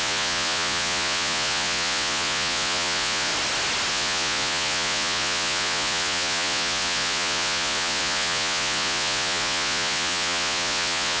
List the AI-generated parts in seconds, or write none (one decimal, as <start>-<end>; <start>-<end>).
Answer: 0.0-3.3; 3.9-11.2